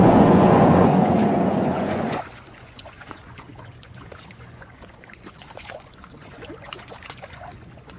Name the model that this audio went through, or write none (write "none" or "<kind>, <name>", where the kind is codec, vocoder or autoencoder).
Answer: vocoder, Vocos